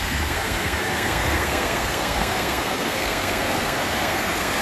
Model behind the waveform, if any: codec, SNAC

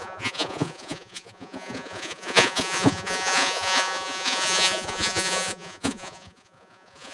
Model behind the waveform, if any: vocoder, Vocos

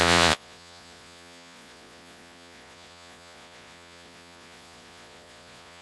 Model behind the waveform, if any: vocoder, Vocos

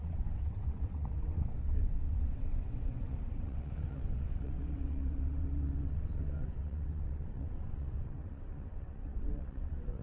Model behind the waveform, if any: vocoder, WaveNeXt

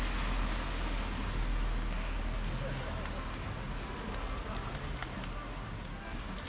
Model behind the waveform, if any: none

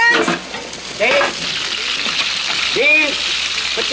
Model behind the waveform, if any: none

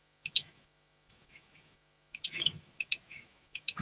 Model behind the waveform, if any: autoencoder, DAC-VAE